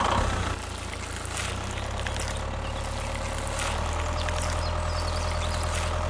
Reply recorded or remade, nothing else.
recorded